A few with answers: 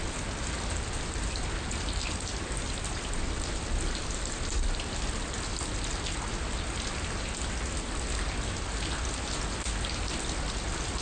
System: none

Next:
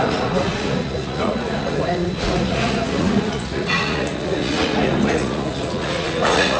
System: vocoder, Vocos